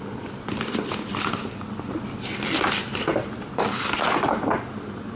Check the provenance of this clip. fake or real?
real